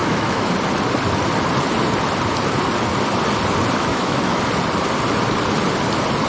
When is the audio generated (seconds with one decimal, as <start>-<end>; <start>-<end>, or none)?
0.0-0.5; 3.9-4.4